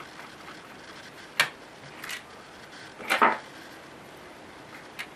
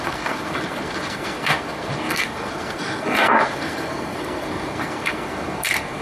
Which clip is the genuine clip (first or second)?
first